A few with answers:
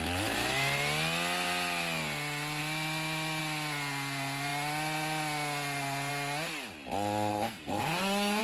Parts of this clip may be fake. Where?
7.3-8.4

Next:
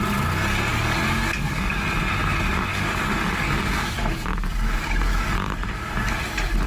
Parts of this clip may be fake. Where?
0.7-1.8; 2.7-6.2

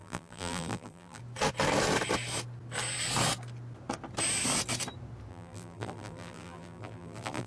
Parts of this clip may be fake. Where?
0.0-1.2; 5.3-7.5

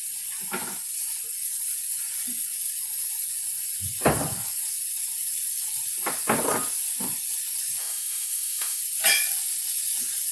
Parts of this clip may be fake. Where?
7.8-8.8

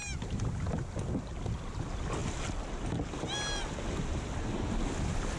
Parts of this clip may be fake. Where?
none

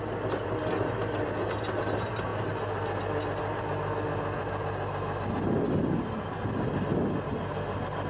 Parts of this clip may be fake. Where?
none